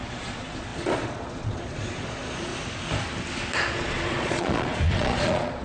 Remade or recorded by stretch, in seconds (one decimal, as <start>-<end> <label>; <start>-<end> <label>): 0.0-2.5 remade; 2.5-3.7 recorded; 3.7-5.6 remade